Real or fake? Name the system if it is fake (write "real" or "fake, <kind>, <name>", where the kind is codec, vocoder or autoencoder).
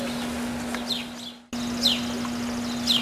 real